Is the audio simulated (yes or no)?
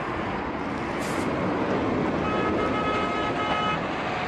no